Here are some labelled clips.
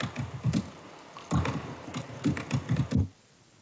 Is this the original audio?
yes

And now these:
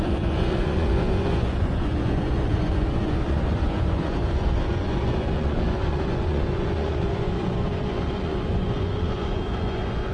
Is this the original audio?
no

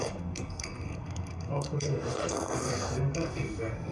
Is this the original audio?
no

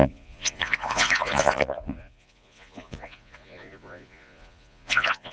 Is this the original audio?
no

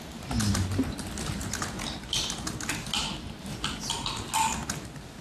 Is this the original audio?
yes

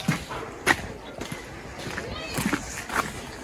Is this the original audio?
yes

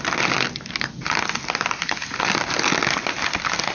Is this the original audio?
yes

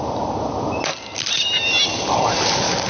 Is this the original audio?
yes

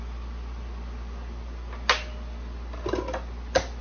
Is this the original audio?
yes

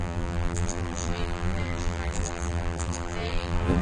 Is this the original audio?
no